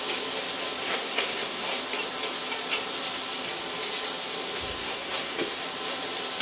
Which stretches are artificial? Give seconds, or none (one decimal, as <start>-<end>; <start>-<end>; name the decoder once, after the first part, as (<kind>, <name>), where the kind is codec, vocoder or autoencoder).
0.8-1.8 (codec, SNAC); 4.8-5.6